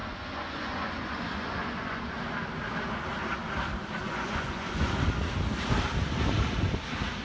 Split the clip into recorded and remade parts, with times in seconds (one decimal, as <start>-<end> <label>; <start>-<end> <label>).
0.0-2.2 remade; 2.2-4.0 recorded; 4.0-4.9 remade; 4.9-7.2 recorded